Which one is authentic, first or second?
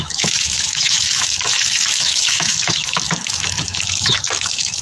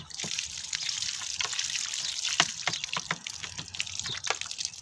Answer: second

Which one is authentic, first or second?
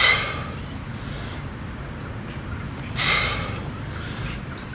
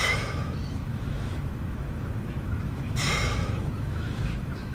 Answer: first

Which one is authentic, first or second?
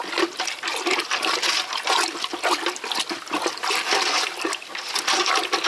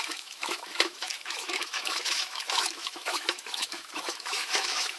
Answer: first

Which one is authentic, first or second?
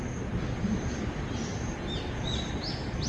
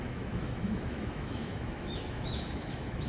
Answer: first